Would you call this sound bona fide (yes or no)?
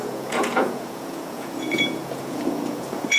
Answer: no